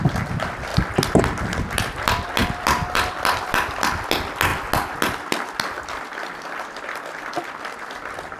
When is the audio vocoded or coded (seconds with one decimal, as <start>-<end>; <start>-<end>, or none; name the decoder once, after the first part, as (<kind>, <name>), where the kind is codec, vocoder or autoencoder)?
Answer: 0.7-1.2 (vocoder, BigVGAN v2); 2.4-3.9